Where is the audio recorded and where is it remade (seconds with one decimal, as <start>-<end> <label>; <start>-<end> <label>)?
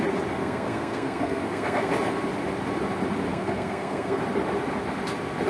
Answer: 0.0-0.4 recorded; 0.4-1.9 remade; 1.9-3.3 recorded; 3.3-4.2 remade; 4.2-5.5 recorded